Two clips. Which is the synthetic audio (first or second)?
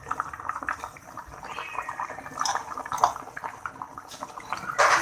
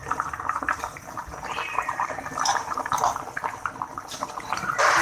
second